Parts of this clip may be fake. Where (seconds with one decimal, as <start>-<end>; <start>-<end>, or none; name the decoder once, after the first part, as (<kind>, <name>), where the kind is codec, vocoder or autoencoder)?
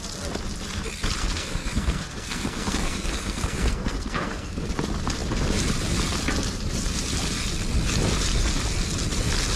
1.2-4.7 (codec, SNAC)